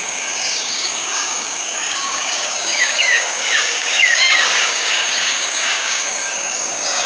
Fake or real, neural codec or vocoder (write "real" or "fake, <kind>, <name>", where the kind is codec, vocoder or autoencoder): fake, codec, DAC